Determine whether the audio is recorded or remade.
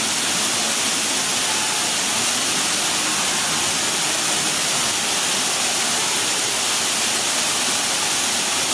recorded